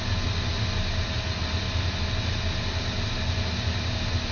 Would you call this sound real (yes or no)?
yes